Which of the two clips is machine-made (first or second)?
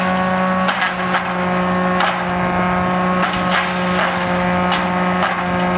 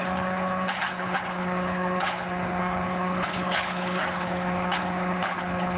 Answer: second